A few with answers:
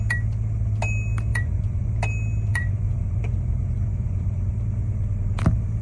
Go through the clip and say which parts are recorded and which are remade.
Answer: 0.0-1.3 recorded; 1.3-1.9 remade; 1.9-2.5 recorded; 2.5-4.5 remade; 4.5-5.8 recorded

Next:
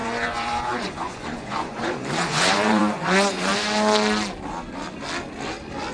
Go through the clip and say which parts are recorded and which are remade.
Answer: 0.0-3.5 remade; 3.5-5.9 recorded

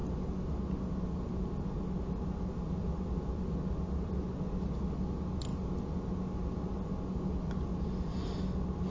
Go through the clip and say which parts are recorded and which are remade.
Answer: 0.0-8.9 recorded

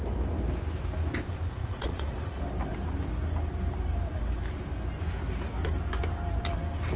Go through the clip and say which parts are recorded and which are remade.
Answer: 0.0-1.6 recorded; 1.6-2.4 remade; 2.4-7.0 recorded

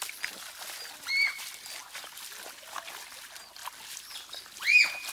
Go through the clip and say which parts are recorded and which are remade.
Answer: 0.0-5.1 recorded

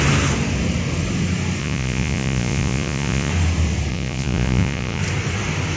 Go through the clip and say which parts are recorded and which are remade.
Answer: 0.0-1.6 recorded; 1.6-3.3 remade; 3.3-3.9 recorded; 3.9-5.0 remade; 5.0-5.8 recorded

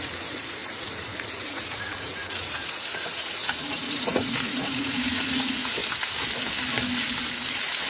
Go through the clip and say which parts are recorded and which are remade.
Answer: 0.0-5.8 remade; 5.8-7.5 recorded; 7.5-7.9 remade